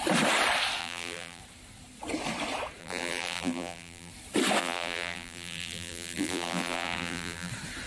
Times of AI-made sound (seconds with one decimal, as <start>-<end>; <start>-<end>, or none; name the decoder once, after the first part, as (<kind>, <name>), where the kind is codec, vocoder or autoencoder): 0.8-1.4 (vocoder, BigVGAN v2); 2.8-4.1; 4.6-7.5